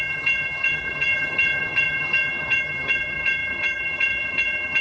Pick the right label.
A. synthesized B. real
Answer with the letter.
A